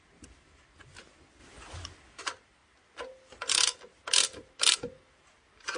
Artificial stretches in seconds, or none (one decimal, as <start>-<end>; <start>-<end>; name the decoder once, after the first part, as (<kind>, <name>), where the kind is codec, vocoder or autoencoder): none